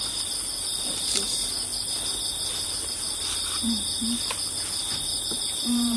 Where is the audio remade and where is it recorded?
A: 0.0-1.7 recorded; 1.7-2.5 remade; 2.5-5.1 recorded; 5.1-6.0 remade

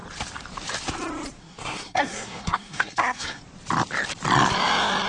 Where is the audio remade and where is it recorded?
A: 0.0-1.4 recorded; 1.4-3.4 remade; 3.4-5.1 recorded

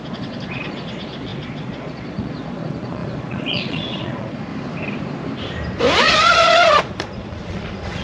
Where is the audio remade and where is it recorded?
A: 0.0-4.5 remade; 4.5-6.0 recorded; 6.0-8.0 remade

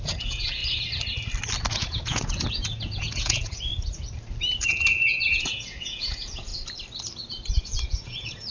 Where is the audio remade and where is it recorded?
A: 0.0-0.6 remade; 0.6-1.7 recorded; 1.7-3.7 remade; 3.7-4.7 recorded; 4.7-6.5 remade; 6.5-7.6 recorded; 7.6-8.5 remade

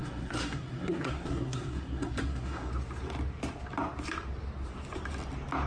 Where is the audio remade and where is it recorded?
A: 0.0-2.7 remade; 2.7-5.7 recorded